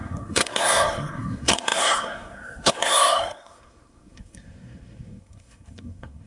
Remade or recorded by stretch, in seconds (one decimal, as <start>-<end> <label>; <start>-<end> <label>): 0.0-6.3 remade